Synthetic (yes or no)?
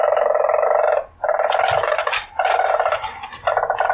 no